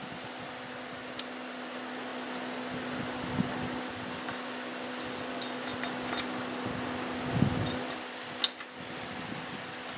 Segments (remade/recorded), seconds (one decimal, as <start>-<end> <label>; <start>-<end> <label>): 0.0-10.0 recorded